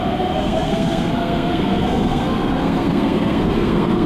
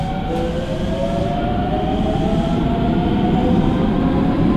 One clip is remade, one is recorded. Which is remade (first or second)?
first